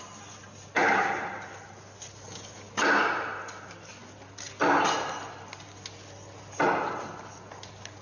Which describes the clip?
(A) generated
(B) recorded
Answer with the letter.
B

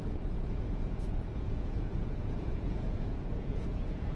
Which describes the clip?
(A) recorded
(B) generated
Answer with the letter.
B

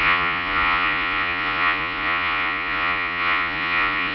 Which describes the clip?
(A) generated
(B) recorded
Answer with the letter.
A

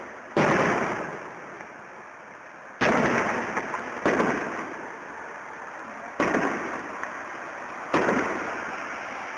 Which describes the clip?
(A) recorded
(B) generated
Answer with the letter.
A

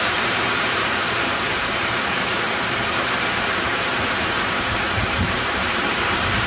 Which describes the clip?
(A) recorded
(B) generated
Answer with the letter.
B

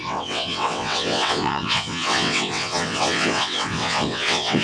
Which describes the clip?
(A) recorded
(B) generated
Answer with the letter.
B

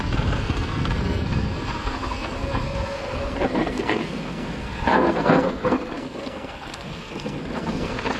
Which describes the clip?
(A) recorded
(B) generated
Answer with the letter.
B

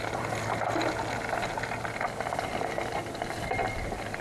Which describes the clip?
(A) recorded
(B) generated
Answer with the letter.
A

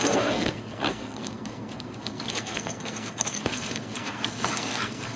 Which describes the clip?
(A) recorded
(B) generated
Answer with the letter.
B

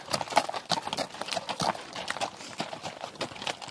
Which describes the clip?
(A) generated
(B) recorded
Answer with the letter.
B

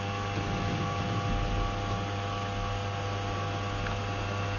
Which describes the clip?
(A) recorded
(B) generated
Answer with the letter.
A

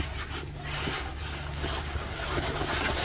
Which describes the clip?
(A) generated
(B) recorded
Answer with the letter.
B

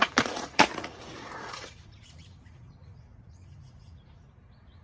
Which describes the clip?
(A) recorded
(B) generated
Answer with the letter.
B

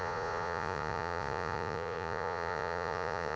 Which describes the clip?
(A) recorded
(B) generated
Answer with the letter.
B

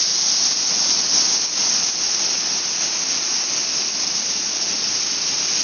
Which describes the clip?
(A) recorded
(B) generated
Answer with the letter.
A